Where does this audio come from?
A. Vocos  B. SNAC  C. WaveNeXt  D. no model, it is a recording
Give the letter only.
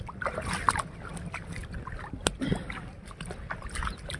D